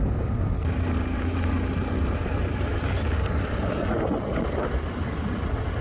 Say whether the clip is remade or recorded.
recorded